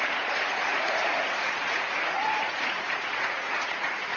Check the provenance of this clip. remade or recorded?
remade